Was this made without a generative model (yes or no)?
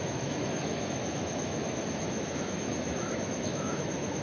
no